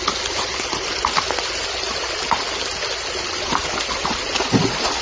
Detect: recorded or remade recorded